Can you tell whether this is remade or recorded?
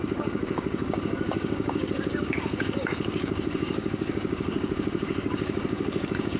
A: remade